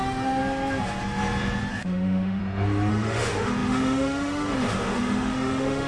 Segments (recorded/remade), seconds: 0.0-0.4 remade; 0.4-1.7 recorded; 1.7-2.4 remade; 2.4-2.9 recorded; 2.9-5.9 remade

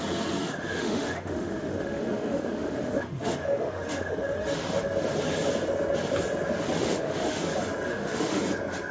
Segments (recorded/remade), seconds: 0.0-0.4 recorded; 0.4-4.9 remade; 4.9-6.8 recorded; 6.8-7.4 remade; 7.4-7.9 recorded; 7.9-8.4 remade; 8.4-8.9 recorded

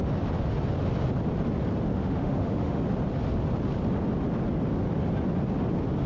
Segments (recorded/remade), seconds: 0.0-1.9 recorded; 1.9-2.8 remade; 2.8-6.1 recorded

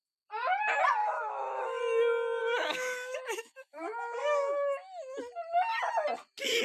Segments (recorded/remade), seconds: 0.0-1.0 recorded; 1.0-1.8 remade; 1.8-2.4 recorded; 2.4-5.2 remade; 5.2-6.6 recorded

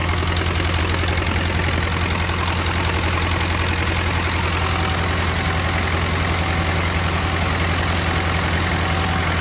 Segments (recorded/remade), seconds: 0.0-9.4 recorded

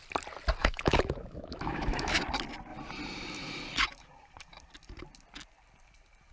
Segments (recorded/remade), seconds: 0.0-0.6 recorded; 0.6-2.2 remade; 2.2-6.3 recorded

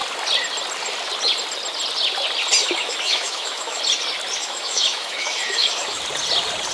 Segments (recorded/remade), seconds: 0.0-2.6 recorded; 2.6-3.8 remade; 3.8-4.4 recorded; 4.4-6.0 remade; 6.0-6.7 recorded